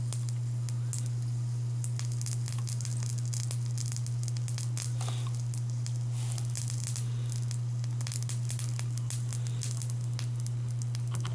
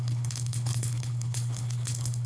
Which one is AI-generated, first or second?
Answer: second